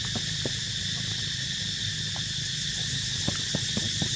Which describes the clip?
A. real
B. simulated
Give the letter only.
A